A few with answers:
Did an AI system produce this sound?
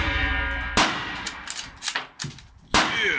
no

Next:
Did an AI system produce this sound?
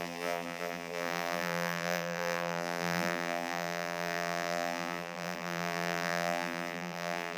yes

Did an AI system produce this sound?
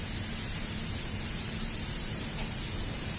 yes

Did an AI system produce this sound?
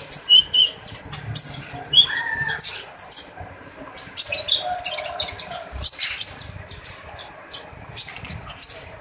no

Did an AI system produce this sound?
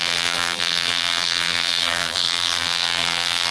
yes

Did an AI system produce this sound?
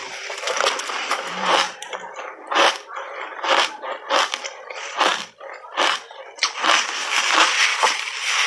yes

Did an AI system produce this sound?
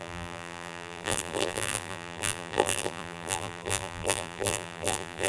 yes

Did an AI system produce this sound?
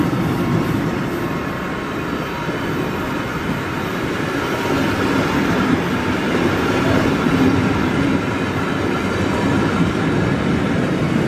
yes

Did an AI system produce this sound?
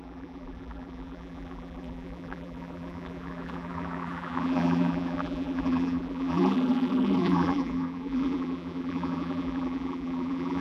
yes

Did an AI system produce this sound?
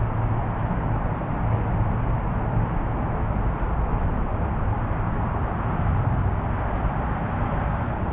no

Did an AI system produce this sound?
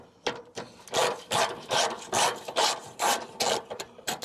no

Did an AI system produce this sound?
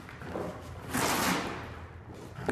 no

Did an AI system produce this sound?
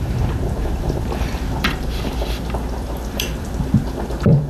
yes